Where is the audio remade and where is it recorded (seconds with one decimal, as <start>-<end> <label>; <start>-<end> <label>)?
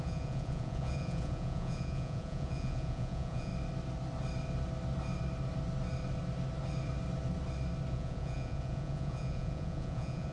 0.0-3.5 remade; 3.5-7.9 recorded; 7.9-10.3 remade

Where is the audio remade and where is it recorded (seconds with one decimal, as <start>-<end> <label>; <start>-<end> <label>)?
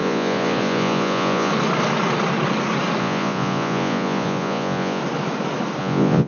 0.0-1.5 remade; 1.5-3.0 recorded; 3.0-5.0 remade; 5.0-5.8 recorded; 5.8-6.3 remade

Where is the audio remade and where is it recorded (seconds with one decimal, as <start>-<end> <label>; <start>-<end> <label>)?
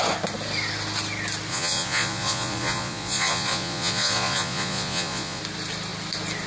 0.0-1.5 recorded; 1.5-5.4 remade; 5.4-6.5 recorded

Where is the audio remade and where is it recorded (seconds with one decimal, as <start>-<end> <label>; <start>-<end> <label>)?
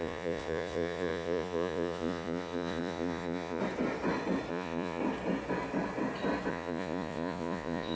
0.0-3.6 remade; 3.6-4.5 recorded; 4.5-5.0 remade; 5.0-6.5 recorded; 6.5-8.0 remade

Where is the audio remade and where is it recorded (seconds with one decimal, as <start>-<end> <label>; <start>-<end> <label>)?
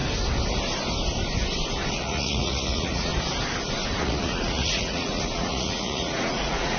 0.0-1.9 recorded; 1.9-3.1 remade; 3.1-4.0 recorded; 4.0-6.8 remade